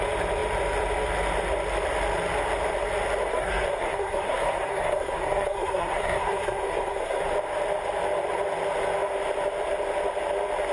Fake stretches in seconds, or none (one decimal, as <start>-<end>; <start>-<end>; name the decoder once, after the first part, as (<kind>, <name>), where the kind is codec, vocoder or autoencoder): 3.3-7.2 (codec, SNAC)